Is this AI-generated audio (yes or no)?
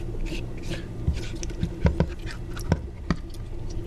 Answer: no